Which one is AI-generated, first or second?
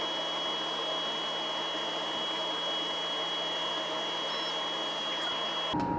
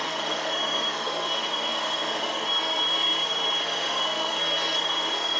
second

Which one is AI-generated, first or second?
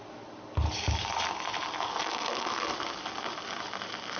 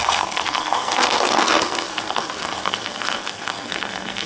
second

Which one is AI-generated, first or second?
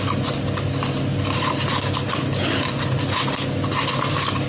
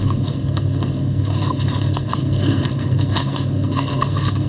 second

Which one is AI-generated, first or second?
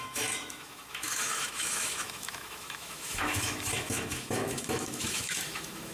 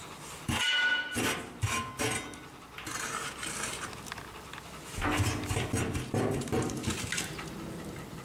first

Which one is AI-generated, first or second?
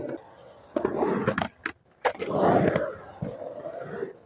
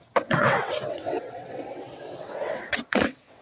second